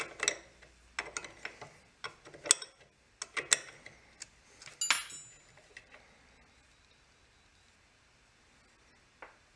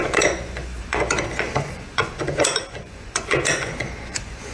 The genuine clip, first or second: first